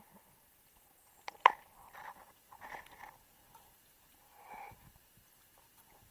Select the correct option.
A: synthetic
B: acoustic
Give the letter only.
B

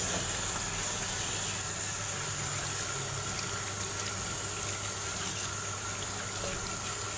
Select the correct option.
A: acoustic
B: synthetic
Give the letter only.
A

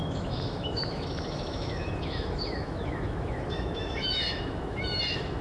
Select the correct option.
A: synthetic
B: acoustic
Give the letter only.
A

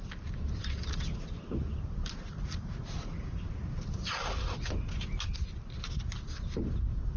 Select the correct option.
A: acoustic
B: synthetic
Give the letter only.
A